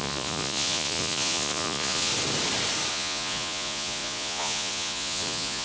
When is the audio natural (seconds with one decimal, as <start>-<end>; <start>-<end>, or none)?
2.1-2.9